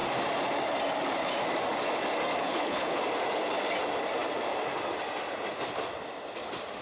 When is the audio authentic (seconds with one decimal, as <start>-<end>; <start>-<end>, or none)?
0.0-2.4; 3.0-6.8